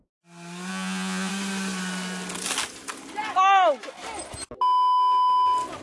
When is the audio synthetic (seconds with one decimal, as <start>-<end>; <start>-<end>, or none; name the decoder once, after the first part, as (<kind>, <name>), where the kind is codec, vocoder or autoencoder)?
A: 0.7-1.3 (vocoder, Vocos)

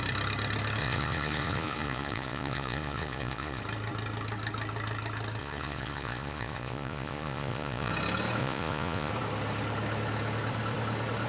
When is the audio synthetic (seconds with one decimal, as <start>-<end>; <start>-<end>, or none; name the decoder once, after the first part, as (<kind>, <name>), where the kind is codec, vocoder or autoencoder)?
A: 0.8-3.6 (vocoder, Vocos); 5.4-7.9; 8.4-9.1

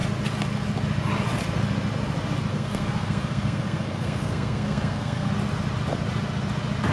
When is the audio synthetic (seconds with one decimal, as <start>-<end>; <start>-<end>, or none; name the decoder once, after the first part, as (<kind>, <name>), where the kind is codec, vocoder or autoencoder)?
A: 2.5-5.3 (codec, SNAC)

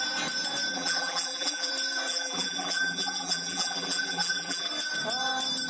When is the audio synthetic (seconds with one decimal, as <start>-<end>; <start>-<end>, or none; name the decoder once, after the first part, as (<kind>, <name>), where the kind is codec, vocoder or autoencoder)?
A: 0.7-1.7 (vocoder, BigVGAN v2); 2.1-4.7

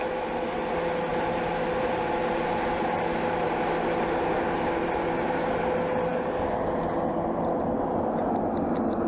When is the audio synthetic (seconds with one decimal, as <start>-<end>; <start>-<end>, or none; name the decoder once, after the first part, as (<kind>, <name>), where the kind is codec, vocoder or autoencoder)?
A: 1.1-2.8 (vocoder, BigVGAN v2)

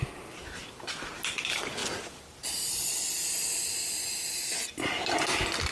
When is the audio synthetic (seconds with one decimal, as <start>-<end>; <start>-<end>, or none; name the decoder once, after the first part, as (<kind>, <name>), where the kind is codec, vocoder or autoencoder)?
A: none

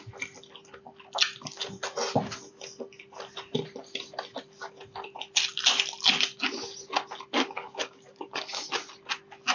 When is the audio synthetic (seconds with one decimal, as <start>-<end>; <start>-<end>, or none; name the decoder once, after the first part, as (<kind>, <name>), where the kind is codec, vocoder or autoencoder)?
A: 7.6-8.7 (codec, DAC)

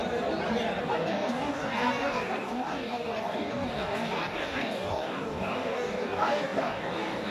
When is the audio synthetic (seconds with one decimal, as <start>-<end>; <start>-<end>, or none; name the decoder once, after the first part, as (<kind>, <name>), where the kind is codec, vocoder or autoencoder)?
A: 0.8-7.3 (codec, DAC)